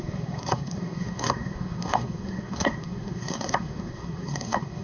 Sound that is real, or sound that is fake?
fake